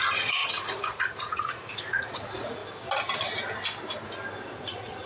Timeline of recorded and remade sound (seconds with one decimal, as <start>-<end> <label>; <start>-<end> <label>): 0.0-2.6 remade; 2.6-4.5 recorded; 4.5-5.1 remade